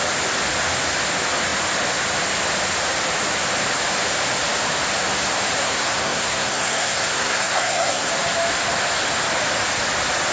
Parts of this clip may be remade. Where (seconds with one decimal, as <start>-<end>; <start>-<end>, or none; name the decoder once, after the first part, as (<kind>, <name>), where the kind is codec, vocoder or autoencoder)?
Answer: 5.6-8.1 (codec, SNAC)